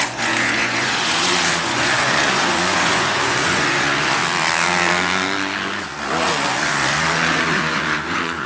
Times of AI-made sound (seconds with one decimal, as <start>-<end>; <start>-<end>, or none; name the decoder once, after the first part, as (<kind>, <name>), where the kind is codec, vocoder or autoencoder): 0.0-4.2 (vocoder, Vocos); 5.8-8.5

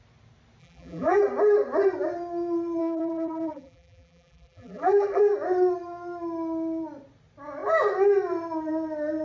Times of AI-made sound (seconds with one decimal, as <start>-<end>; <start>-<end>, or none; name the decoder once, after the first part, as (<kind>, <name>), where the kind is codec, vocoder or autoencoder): 0.6-1.2 (vocoder, BigVGAN v2); 2.8-5.2

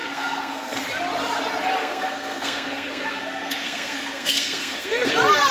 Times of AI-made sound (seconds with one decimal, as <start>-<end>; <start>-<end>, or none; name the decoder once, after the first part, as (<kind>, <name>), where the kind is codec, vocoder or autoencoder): 0.0-0.8 (codec, SNAC); 1.8-5.1

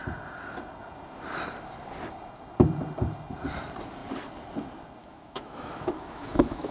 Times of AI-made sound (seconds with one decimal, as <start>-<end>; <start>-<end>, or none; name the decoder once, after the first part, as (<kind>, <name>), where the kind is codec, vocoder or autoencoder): 5.0-6.7 (autoencoder, DAC-VAE)

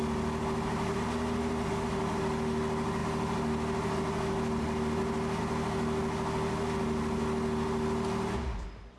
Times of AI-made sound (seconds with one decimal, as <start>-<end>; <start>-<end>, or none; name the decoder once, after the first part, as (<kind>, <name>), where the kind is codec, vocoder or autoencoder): none

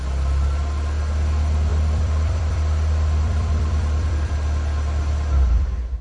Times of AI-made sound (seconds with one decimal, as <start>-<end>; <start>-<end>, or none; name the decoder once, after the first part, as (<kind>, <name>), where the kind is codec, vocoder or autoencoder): 1.7-4.3 (vocoder, BigVGAN v2)